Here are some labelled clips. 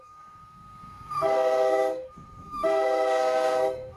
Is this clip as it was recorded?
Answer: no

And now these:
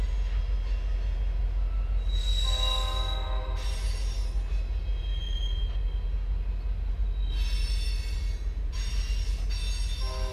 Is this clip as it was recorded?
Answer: yes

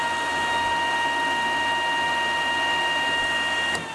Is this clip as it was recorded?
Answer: yes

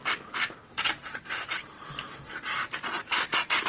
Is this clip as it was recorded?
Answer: yes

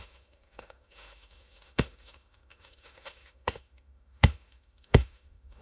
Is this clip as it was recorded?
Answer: no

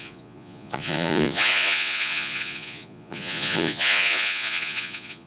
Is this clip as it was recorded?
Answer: no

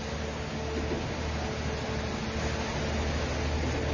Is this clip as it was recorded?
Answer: yes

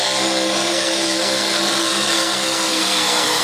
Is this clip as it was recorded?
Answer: no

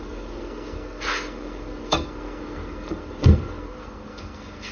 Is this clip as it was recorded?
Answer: no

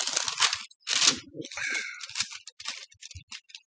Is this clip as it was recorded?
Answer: yes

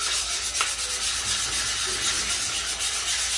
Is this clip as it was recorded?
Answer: yes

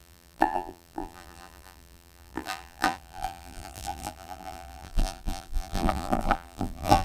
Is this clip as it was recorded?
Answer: no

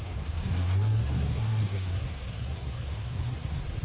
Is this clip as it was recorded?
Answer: no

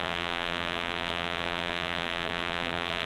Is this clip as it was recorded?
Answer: no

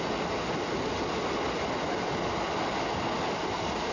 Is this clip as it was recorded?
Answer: yes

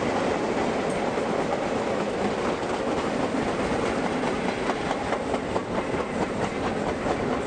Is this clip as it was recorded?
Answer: yes